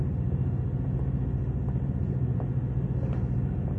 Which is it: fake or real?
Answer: real